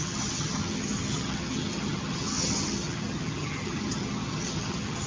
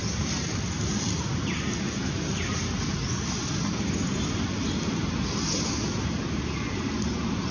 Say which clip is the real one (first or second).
second